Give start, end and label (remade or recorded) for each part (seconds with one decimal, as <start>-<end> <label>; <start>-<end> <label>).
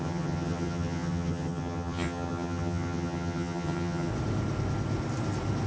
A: 0.0-4.1 remade; 4.1-5.7 recorded